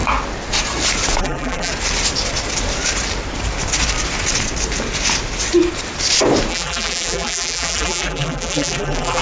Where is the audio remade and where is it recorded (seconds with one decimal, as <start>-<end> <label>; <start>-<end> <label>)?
0.0-1.2 recorded; 1.2-1.7 remade; 1.7-6.5 recorded; 6.5-9.2 remade